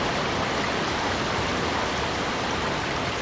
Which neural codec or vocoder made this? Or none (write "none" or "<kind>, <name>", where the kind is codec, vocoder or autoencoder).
none